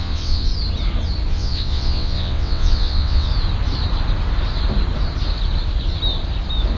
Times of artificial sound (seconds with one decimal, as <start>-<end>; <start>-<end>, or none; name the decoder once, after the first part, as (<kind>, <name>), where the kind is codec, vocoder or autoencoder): 0.0-0.5 (vocoder, WaveNeXt); 1.3-3.3